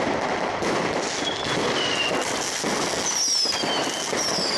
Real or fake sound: real